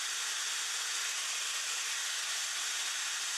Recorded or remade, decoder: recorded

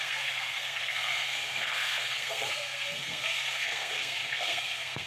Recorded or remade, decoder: remade, codec, SNAC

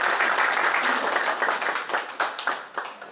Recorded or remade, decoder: recorded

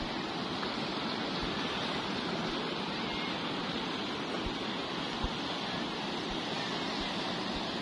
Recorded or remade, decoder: recorded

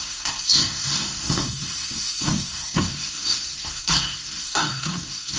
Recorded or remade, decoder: remade, codec, SNAC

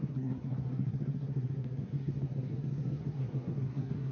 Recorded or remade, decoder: remade, codec, SNAC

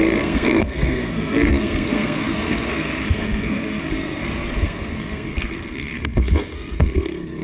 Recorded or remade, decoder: remade, codec, SNAC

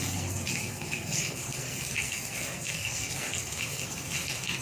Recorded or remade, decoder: remade, codec, SNAC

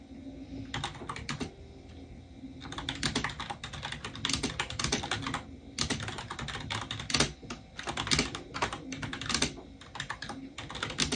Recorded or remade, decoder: recorded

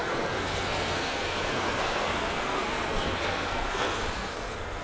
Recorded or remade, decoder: remade, codec, SNAC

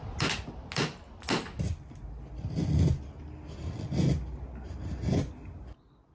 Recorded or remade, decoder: recorded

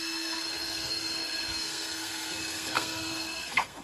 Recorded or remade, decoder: remade, codec, SNAC